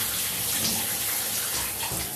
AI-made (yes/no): no